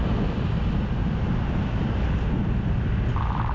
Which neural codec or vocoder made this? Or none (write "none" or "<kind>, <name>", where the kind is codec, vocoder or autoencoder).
none